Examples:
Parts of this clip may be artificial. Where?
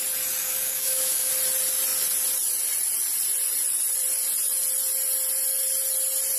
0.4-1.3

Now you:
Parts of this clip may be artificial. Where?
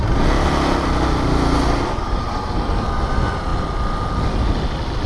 none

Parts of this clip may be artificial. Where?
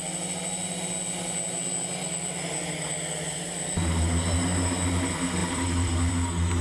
5.4-6.1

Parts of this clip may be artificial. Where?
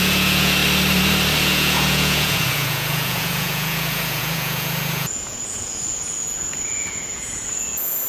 0.0-0.6; 1.4-8.1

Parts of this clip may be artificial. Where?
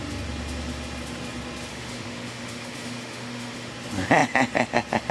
1.7-3.7